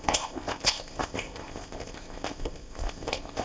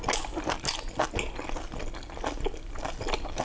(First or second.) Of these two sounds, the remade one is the first